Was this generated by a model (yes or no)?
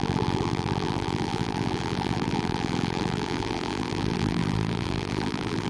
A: yes